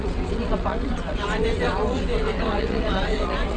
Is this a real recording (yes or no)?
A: no